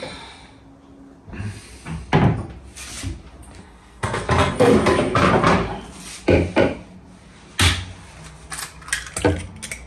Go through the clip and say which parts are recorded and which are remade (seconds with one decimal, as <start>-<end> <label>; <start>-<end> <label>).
0.0-3.6 recorded; 3.6-4.7 remade; 4.7-9.9 recorded